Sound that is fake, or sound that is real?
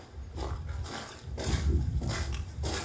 real